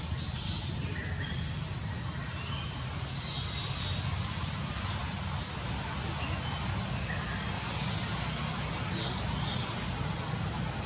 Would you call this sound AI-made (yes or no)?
no